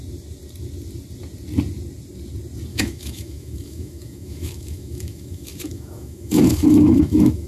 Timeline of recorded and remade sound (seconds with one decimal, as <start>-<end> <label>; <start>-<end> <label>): 0.0-2.7 recorded; 2.7-7.5 remade